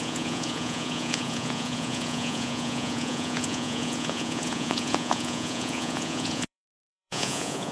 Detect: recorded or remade remade